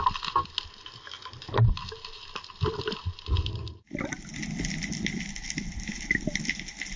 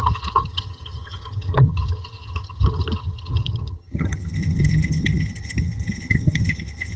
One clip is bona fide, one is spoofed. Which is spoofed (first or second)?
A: second